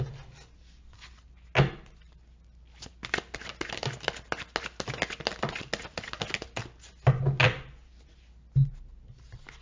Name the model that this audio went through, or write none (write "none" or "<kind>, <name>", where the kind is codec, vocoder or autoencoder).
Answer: none